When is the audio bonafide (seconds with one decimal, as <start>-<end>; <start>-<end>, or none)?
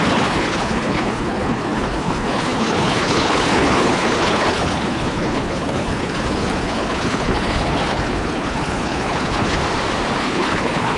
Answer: 9.6-10.2